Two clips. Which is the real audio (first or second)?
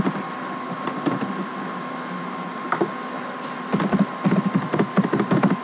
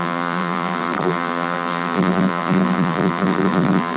first